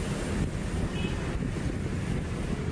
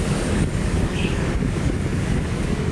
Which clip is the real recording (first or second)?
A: first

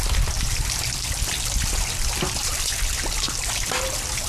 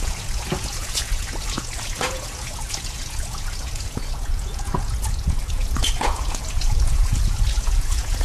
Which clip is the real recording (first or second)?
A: first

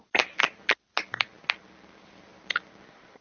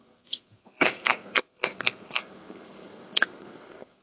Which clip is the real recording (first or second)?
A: first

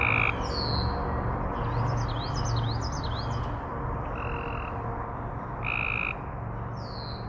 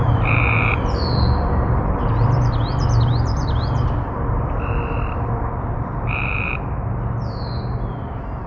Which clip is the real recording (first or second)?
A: first